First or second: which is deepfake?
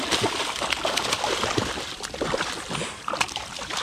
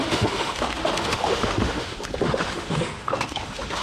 second